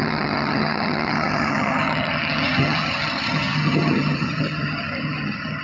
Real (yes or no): no